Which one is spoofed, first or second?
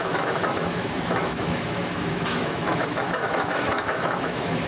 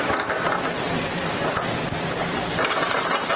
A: first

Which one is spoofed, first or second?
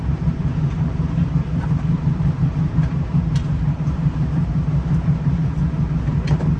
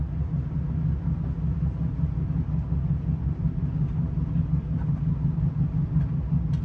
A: first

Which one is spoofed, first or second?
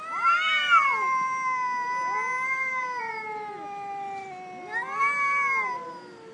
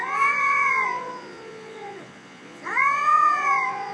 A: second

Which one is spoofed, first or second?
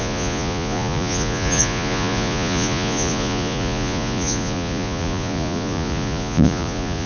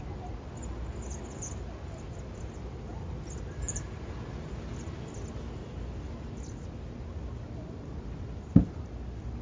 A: first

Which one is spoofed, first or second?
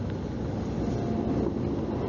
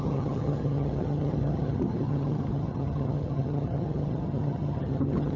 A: second